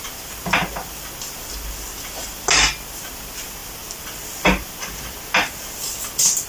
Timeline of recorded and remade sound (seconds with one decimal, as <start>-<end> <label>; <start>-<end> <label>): 0.0-6.5 recorded